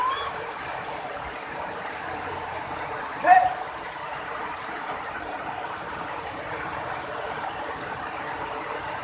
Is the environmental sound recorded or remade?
remade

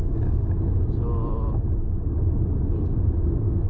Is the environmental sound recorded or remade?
recorded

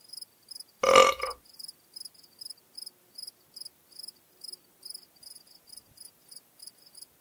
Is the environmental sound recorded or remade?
recorded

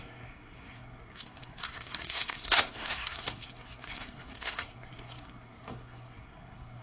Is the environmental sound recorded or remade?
remade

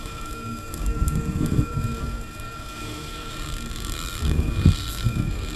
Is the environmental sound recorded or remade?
remade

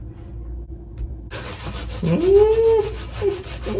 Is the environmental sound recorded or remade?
recorded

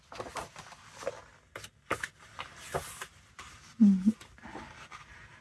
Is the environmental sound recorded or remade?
recorded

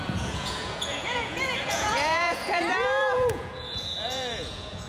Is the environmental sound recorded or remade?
remade